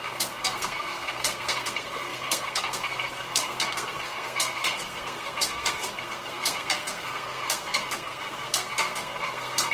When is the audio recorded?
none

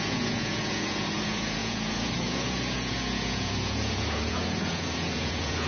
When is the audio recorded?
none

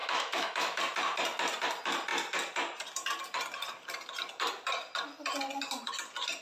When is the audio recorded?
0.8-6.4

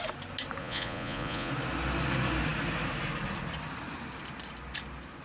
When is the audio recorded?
0.0-0.6; 1.5-5.2

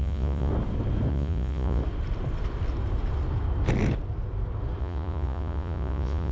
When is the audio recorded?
0.5-1.1; 1.8-4.8